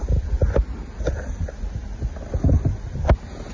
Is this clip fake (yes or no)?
no